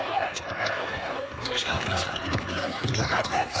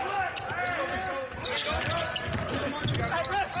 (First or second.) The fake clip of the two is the first